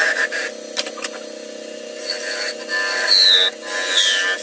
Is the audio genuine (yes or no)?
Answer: yes